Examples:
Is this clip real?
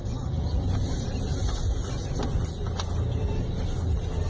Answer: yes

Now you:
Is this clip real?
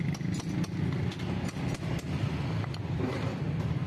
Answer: yes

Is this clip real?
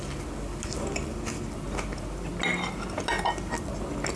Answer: yes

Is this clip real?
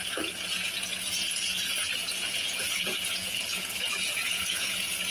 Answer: no